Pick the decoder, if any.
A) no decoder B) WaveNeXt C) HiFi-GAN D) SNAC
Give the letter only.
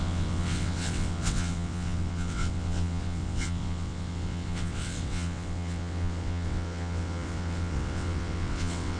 B